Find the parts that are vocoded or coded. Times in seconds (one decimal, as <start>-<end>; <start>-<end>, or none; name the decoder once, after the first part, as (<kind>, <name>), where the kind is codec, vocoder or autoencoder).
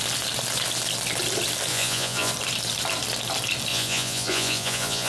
1.7-2.3 (vocoder, Vocos); 3.7-5.1